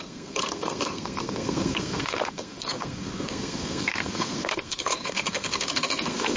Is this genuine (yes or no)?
no